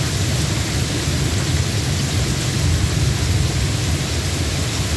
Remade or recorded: recorded